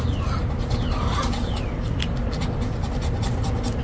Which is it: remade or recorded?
recorded